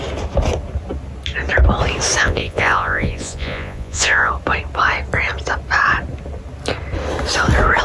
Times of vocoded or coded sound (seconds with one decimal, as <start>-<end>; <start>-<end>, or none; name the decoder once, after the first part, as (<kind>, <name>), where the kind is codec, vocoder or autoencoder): 2.2-4.3 (vocoder, Vocos)